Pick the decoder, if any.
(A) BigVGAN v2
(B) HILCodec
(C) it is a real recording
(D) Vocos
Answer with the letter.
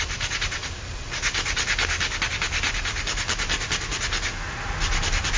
C